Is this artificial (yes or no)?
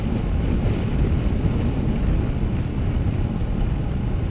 no